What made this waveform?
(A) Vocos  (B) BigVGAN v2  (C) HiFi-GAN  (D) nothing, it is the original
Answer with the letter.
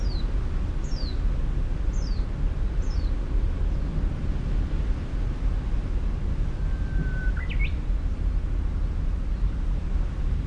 D